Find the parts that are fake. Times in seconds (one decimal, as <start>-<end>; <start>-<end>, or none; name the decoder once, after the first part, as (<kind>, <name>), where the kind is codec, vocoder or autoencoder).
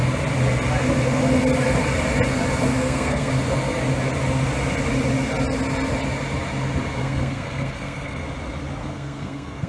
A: 2.7-3.3 (codec, SNAC); 7.0-8.2; 8.8-9.7